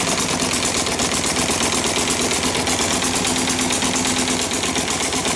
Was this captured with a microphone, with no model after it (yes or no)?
yes